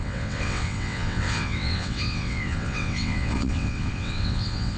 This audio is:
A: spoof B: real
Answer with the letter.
A